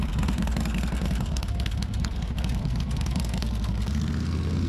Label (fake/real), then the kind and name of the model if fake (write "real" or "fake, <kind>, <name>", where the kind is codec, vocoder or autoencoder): fake, codec, SNAC